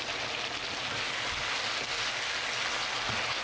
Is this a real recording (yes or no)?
yes